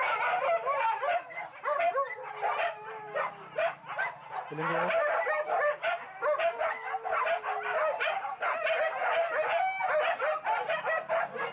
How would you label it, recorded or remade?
recorded